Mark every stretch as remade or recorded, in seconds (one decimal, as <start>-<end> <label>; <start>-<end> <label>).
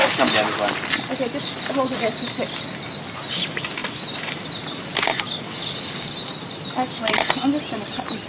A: 0.0-8.3 recorded